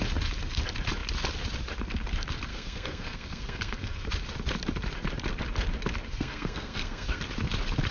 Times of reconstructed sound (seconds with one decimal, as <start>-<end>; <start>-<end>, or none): 2.5-4.1; 6.1-7.2